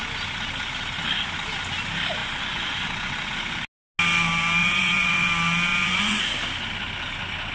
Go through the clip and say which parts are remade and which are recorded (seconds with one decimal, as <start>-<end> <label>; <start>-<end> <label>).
0.0-2.2 recorded; 2.2-3.1 remade; 3.1-4.6 recorded; 4.6-5.3 remade; 5.3-5.7 recorded; 5.7-6.2 remade; 6.2-7.5 recorded